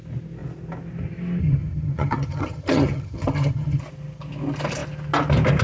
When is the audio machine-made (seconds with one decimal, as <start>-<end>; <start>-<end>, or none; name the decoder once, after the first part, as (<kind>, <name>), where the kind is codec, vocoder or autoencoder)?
1.4-3.8 (vocoder, HiFi-GAN)